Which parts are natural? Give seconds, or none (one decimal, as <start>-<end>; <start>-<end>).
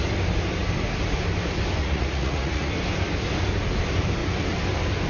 0.0-1.8; 2.7-5.1